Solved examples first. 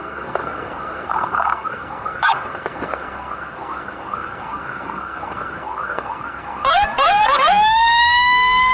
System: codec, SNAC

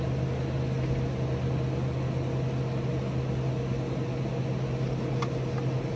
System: none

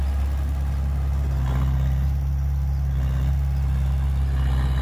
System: none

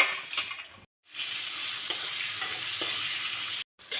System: none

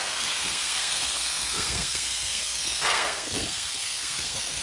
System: codec, SNAC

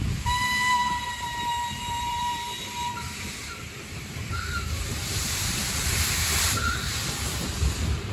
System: vocoder, BigVGAN v2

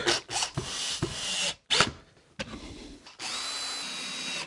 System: none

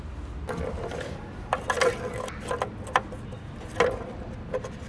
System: none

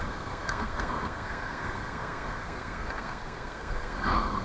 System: codec, SNAC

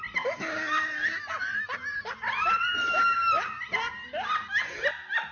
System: none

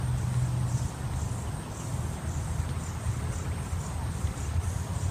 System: none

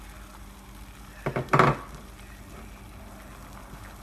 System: none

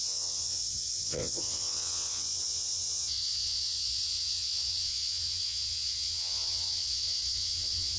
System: vocoder, WaveNeXt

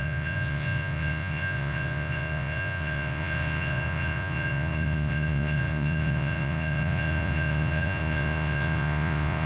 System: vocoder, Vocos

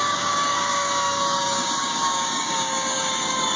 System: codec, DAC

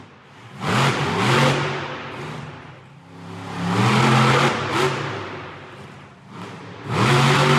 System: none